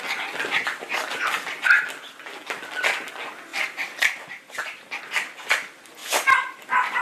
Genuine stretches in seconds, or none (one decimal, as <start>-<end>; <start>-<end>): 0.0-3.5; 5.0-6.0